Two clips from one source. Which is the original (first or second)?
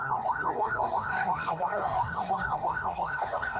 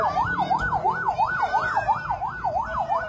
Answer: second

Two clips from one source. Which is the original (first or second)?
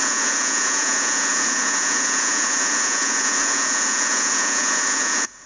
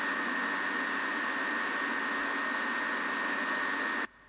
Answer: second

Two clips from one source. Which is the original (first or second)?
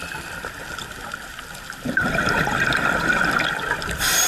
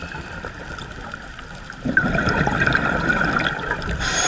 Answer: first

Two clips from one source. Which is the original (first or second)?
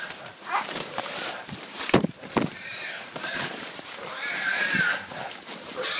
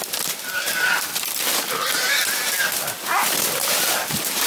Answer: second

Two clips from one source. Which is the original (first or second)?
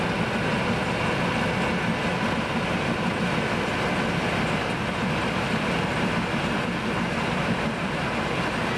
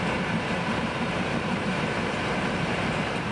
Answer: first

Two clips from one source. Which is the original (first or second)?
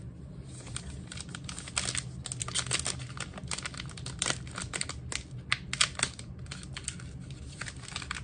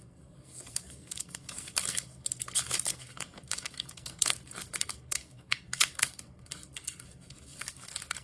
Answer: first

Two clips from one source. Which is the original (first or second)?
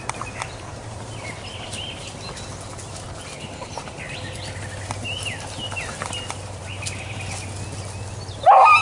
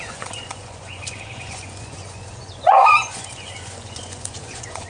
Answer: first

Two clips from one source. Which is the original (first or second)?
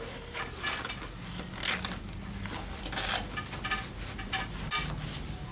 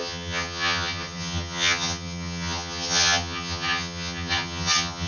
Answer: first